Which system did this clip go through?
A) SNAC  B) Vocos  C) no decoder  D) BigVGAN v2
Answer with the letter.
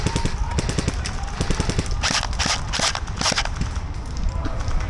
C